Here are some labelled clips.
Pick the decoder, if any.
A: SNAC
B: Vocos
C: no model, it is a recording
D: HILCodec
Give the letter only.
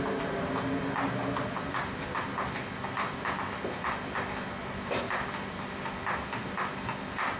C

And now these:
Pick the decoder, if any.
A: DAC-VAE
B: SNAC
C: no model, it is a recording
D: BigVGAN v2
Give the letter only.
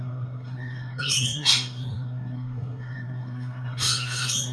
B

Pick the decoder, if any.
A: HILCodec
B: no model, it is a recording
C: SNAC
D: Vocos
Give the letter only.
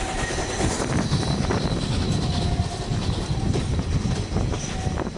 B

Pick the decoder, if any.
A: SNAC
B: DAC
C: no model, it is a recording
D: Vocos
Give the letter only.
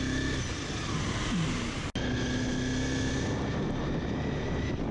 C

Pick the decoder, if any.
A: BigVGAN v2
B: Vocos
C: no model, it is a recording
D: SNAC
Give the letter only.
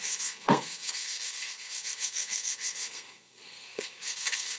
D